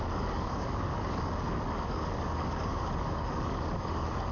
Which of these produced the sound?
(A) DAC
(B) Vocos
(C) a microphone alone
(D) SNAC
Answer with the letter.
A